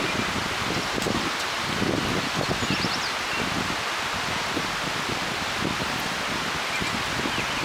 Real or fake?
real